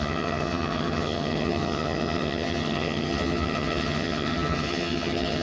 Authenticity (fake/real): fake